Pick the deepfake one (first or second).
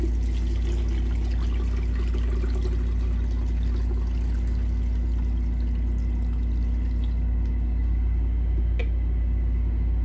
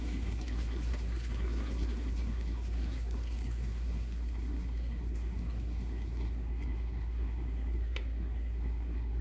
second